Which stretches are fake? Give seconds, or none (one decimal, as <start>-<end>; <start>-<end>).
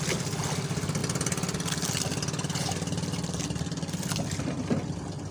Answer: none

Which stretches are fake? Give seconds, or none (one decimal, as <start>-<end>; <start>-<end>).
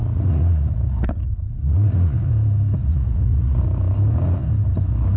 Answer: 0.0-2.3; 2.9-3.6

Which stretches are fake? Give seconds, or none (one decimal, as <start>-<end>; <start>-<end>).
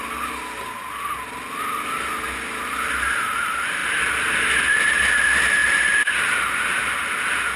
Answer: none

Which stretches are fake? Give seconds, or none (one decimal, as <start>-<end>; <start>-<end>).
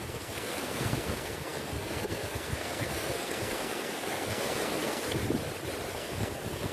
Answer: 0.0-5.2; 5.9-6.7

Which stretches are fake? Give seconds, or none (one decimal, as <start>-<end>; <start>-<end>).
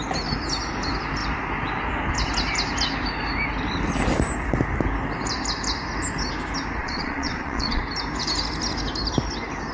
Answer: 6.8-7.8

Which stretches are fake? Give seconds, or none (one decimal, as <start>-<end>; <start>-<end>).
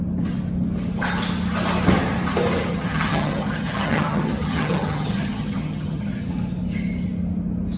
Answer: 2.7-6.3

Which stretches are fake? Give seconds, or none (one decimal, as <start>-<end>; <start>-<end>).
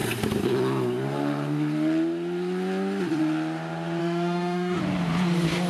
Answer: 4.0-4.8